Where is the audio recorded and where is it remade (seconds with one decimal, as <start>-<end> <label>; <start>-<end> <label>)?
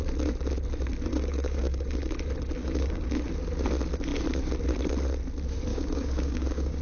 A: 0.0-1.1 recorded; 1.1-2.1 remade; 2.1-2.6 recorded; 2.6-3.2 remade; 3.2-5.7 recorded; 5.7-6.8 remade